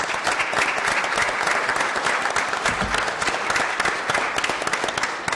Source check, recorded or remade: recorded